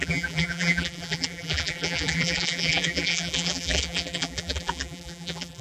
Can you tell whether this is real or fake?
fake